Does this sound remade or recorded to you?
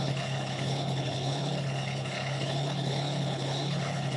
remade